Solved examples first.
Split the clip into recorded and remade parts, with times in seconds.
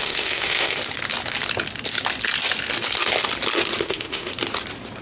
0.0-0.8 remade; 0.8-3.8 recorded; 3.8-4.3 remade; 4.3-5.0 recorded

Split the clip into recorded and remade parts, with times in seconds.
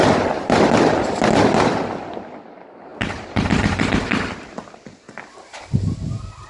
0.0-6.5 recorded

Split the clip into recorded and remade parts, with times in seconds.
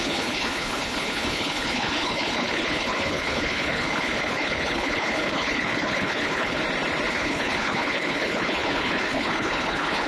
0.0-6.6 remade; 6.6-7.1 recorded; 7.1-10.1 remade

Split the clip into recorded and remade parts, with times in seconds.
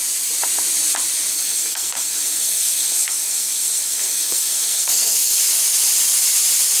0.0-1.3 recorded; 1.3-5.4 remade; 5.4-6.8 recorded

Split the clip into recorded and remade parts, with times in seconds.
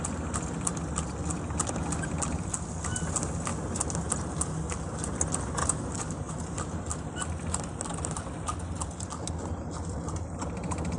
0.0-5.6 recorded; 5.6-6.3 remade; 6.3-11.0 recorded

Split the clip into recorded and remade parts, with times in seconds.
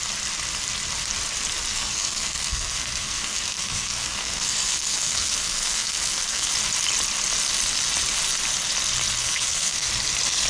0.0-1.7 recorded; 1.7-6.5 remade; 6.5-9.2 recorded; 9.2-9.9 remade; 9.9-10.5 recorded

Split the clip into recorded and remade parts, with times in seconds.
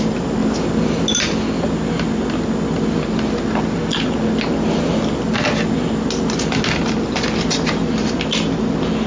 0.0-9.1 recorded